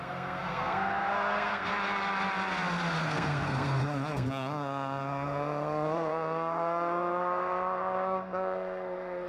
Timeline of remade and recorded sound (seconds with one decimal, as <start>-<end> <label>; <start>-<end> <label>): 0.0-1.7 remade; 1.7-3.0 recorded; 3.0-9.3 remade